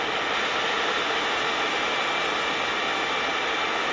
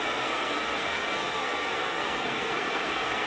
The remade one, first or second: second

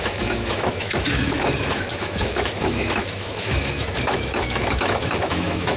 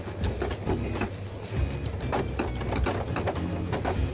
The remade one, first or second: first